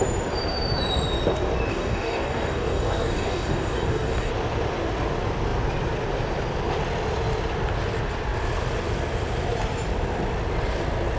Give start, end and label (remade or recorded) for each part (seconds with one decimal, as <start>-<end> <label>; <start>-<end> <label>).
0.0-1.7 recorded; 1.7-4.3 remade; 4.3-11.2 recorded